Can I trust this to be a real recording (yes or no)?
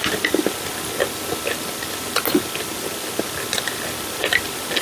yes